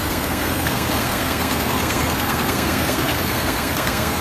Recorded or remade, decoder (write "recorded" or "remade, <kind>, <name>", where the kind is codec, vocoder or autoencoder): remade, codec, SNAC